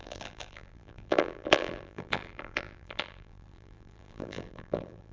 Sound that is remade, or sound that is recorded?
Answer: remade